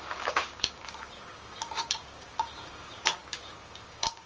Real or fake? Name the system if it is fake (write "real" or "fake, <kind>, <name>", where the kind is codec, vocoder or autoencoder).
fake, codec, DAC